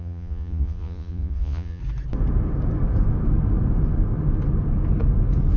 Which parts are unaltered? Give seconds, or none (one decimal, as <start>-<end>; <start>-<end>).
1.8-5.6